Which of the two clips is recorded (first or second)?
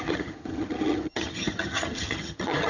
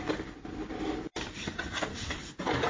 second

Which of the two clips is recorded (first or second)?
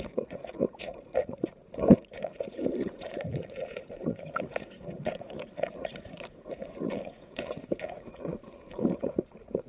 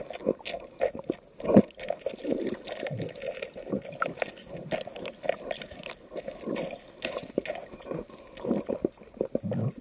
second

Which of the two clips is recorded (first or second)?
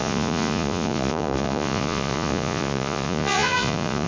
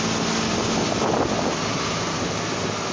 second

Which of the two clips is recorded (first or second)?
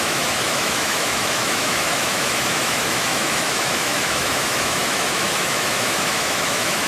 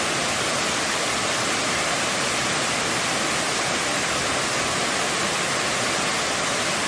second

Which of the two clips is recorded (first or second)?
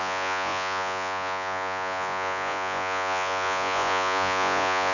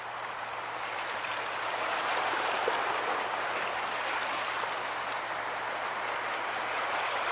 second